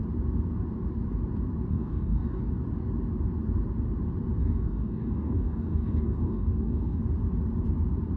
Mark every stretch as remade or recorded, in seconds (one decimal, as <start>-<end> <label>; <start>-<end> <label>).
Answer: 0.0-1.7 recorded; 1.7-2.5 remade; 2.5-4.4 recorded; 4.4-7.0 remade; 7.0-8.2 recorded

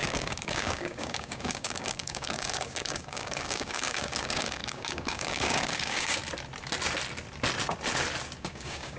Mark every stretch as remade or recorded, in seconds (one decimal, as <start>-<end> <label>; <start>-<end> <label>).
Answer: 0.0-6.2 remade; 6.2-8.4 recorded; 8.4-9.0 remade

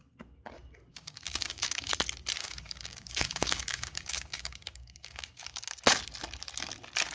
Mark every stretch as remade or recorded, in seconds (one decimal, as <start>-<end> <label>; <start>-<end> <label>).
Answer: 0.0-0.9 recorded; 0.9-1.9 remade; 1.9-2.4 recorded; 2.4-5.6 remade; 5.6-7.1 recorded

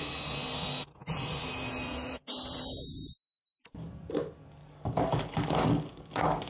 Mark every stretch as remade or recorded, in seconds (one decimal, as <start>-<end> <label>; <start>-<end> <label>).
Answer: 0.0-4.6 recorded; 4.6-6.5 remade

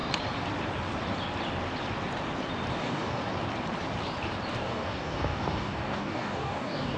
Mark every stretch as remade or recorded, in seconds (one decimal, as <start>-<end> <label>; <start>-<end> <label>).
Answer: 0.0-2.7 recorded; 2.7-3.2 remade; 3.2-4.5 recorded; 4.5-7.0 remade

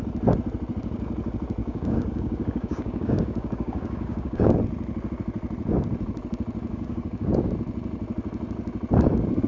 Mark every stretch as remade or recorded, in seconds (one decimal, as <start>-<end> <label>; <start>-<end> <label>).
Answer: 0.0-1.6 recorded; 1.6-4.5 remade; 4.5-6.7 recorded; 6.7-7.5 remade; 7.5-9.5 recorded

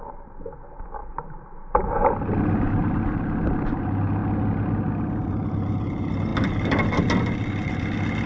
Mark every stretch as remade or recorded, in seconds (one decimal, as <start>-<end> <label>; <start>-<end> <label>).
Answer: 0.0-8.3 recorded